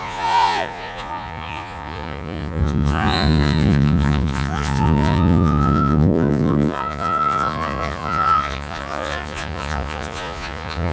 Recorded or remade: remade